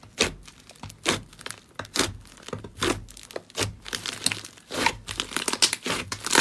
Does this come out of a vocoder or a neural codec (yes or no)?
no